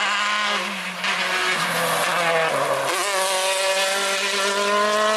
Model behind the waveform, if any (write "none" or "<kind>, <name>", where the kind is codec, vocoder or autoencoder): none